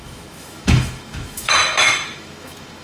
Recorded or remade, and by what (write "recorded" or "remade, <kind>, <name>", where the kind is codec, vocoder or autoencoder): remade, autoencoder, DAC-VAE